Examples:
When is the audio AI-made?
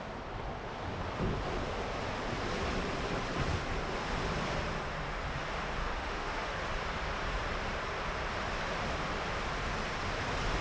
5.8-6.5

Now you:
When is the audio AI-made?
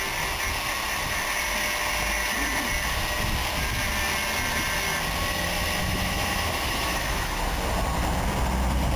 5.8-7.4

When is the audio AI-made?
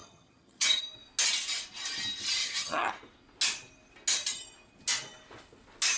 0.0-0.8; 2.4-2.9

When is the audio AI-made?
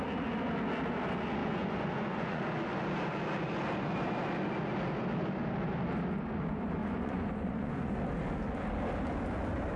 1.4-2.4; 6.8-7.9